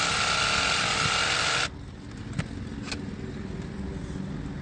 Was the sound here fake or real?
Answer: real